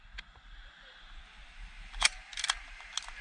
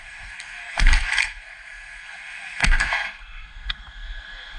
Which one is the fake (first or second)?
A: second